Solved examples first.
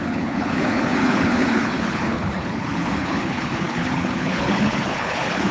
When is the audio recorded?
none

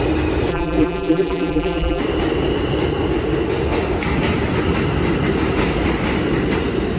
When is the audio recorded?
0.0-0.5; 2.0-7.0